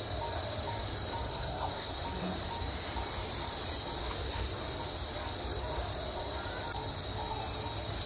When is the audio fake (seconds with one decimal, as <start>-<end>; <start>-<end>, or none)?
1.3-1.9